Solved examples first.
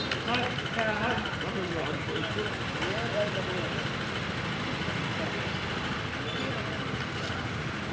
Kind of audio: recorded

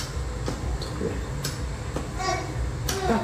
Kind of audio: recorded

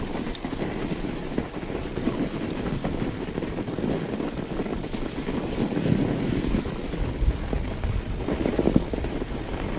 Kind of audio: recorded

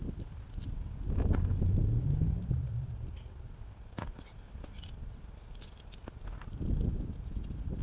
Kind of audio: recorded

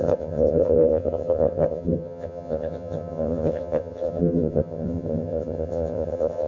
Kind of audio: remade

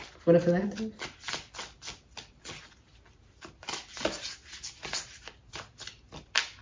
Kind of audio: recorded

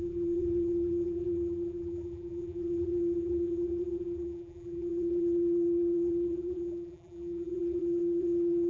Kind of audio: remade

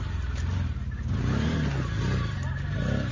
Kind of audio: recorded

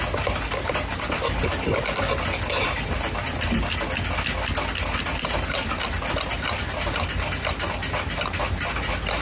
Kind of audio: recorded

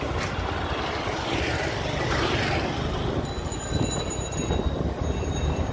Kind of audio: recorded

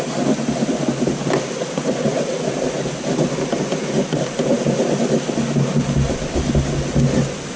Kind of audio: recorded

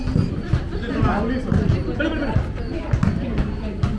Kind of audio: recorded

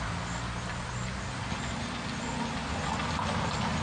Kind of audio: recorded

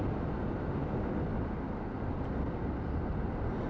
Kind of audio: recorded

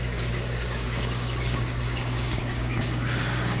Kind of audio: remade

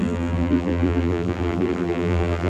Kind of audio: remade